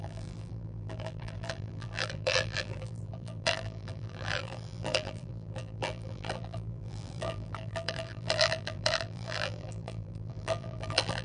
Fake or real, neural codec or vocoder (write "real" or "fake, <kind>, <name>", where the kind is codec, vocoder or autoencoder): fake, vocoder, BigVGAN v2